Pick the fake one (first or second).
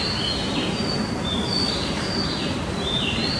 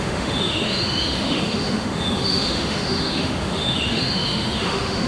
second